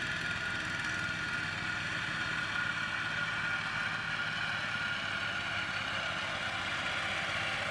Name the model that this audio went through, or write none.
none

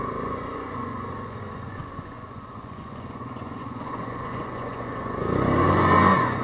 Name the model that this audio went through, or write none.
vocoder, Vocos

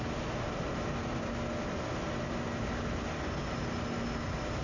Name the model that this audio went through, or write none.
none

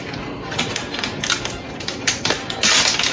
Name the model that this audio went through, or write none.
none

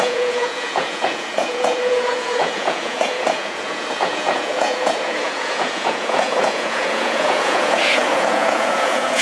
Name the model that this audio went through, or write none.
vocoder, Vocos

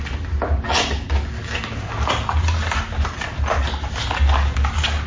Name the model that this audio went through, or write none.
none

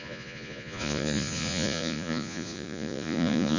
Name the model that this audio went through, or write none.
vocoder, Vocos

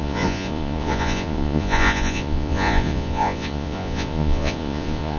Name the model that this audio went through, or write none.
vocoder, Vocos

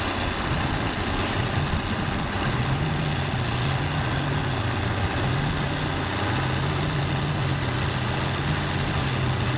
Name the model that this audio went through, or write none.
none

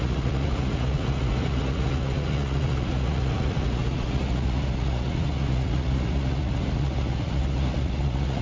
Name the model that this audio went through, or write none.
vocoder, Vocos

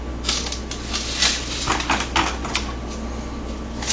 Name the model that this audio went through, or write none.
none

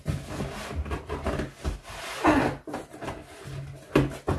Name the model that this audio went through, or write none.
none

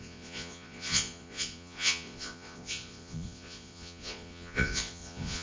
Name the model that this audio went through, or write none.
vocoder, Vocos